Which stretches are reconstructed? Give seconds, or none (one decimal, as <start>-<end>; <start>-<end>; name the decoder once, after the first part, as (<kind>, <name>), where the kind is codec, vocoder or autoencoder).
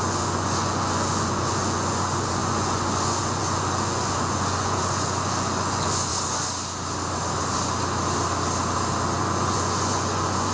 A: 0.0-6.1 (vocoder, Vocos); 9.2-10.5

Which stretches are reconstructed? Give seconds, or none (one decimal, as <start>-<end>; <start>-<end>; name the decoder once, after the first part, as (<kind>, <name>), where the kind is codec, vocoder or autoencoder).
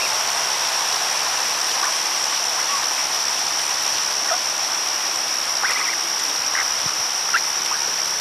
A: none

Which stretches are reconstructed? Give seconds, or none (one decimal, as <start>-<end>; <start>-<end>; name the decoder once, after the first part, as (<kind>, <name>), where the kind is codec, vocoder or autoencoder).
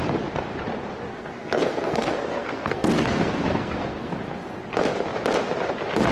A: 1.1-4.2 (codec, SNAC)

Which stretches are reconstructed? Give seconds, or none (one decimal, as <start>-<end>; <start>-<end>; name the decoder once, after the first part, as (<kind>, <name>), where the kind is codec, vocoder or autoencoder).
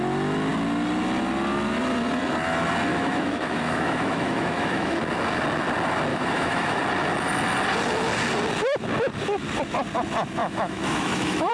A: 2.9-5.0 (autoencoder, DAC-VAE); 6.1-6.8; 10.4-11.5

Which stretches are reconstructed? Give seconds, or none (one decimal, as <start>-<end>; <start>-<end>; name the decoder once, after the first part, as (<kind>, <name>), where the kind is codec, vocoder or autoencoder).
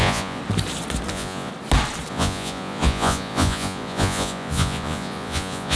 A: 0.0-0.4 (vocoder, Vocos); 1.1-1.5; 2.1-5.8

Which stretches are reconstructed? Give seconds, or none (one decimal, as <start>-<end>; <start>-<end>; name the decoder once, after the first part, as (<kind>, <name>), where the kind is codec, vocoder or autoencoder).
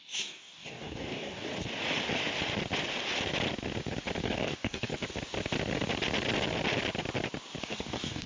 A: 0.0-1.5 (codec, DAC); 4.2-4.9; 7.6-8.3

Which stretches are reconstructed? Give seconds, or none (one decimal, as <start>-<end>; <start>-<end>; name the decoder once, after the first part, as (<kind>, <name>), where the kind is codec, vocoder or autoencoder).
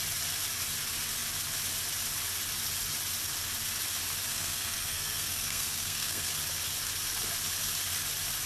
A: 4.3-6.3 (codec, SNAC)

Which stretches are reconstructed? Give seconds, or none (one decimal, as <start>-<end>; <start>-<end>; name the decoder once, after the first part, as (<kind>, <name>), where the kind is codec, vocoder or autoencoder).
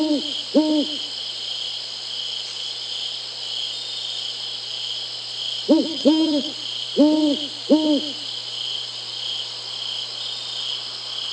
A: 5.9-6.5 (vocoder, HiFi-GAN)